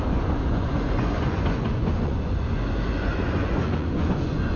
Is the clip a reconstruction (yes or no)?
yes